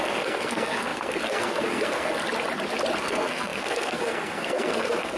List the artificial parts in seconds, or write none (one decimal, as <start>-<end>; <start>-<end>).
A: 0.0-2.2; 3.0-5.2